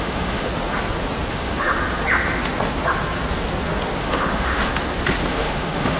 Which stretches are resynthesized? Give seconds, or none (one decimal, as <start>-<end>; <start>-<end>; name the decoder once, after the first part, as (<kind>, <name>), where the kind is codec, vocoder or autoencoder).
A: 0.0-0.5 (autoencoder, DAC-VAE); 1.3-1.8; 4.0-4.7; 5.3-6.0